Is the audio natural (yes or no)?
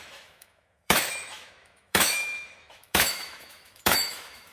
no